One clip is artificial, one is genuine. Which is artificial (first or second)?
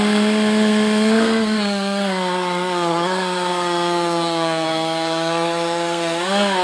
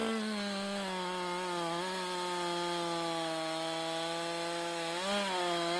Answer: first